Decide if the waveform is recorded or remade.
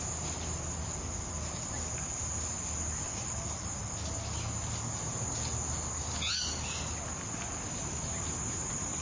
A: recorded